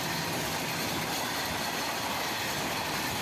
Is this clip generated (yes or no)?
no